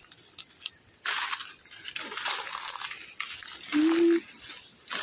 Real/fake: real